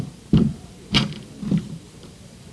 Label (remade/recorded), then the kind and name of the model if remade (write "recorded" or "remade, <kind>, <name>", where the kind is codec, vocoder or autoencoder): remade, vocoder, BigVGAN v2